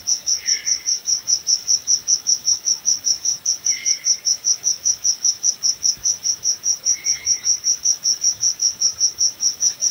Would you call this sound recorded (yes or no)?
no